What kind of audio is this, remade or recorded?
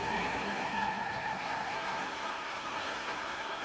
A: remade